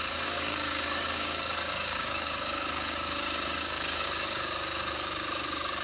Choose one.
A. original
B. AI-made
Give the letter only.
B